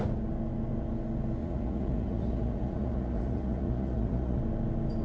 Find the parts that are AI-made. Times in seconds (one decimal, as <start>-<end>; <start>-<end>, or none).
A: 1.4-4.4